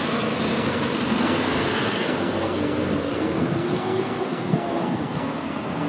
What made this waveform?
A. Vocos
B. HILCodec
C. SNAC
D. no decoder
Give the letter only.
C